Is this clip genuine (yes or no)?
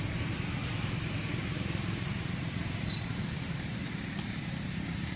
no